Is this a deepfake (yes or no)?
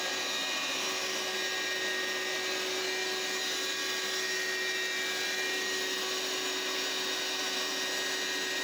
no